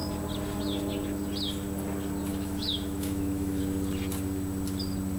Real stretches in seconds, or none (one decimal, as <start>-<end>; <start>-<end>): 0.0-2.3; 3.6-5.2